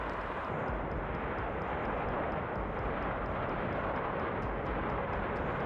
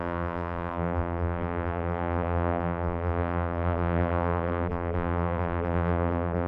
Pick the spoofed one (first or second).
second